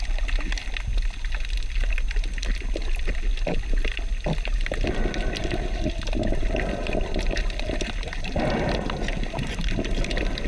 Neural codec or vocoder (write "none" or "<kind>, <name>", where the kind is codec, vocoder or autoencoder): none